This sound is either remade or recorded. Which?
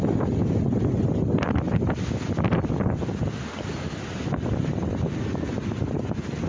recorded